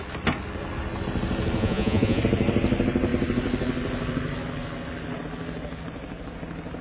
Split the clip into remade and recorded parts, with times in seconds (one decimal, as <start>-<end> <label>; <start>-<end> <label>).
0.0-1.6 recorded; 1.6-2.2 remade; 2.2-6.8 recorded